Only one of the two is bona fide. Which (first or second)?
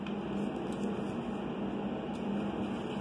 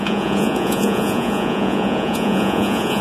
first